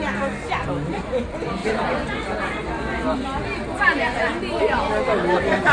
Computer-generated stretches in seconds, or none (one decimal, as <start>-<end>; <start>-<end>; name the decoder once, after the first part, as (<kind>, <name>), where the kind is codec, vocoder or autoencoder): none